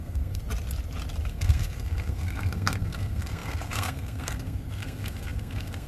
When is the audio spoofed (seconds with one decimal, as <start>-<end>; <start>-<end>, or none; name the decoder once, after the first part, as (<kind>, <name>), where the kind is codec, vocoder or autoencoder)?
0.0-0.4 (codec, SNAC); 1.3-5.9